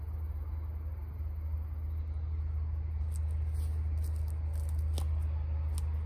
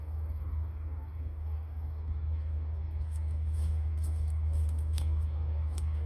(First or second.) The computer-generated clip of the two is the second